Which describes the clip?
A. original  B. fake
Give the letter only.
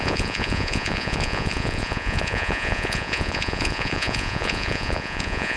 B